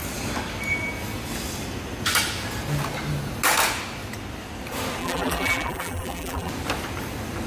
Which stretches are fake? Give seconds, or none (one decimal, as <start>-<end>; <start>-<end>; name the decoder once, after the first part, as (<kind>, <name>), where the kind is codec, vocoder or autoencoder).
5.0-6.5 (vocoder, BigVGAN v2)